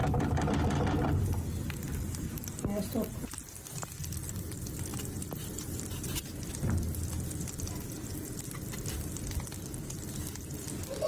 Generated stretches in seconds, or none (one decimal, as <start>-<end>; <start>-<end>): 4.9-6.5